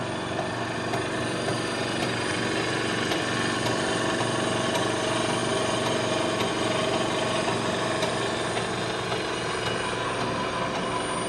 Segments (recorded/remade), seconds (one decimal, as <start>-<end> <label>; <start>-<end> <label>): 0.0-11.3 recorded